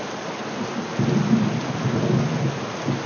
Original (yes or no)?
yes